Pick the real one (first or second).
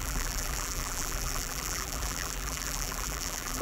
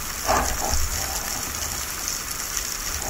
second